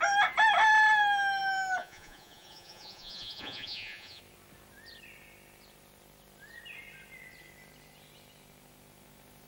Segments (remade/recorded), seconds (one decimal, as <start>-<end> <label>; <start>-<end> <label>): 0.0-1.8 recorded; 1.8-4.2 remade; 4.2-9.5 recorded